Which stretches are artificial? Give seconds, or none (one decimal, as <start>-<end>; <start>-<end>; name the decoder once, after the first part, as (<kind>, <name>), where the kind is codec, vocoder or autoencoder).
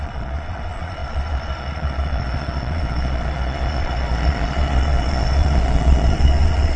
0.0-6.8 (vocoder, Vocos)